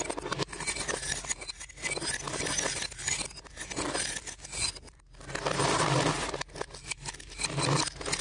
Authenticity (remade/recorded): recorded